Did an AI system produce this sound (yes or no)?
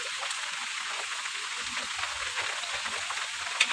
yes